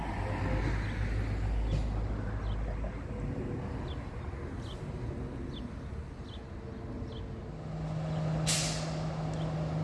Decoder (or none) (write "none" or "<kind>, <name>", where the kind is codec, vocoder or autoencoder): none